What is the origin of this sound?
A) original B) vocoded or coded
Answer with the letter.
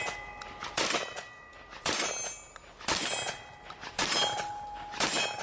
B